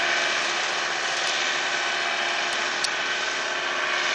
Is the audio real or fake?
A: real